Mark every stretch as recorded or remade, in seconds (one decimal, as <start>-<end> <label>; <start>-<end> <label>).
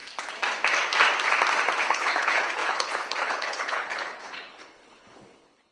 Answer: 0.0-1.8 recorded; 1.8-5.7 remade